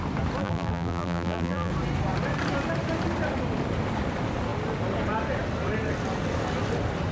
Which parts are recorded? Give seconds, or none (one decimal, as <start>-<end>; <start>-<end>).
0.0-0.4; 1.7-7.1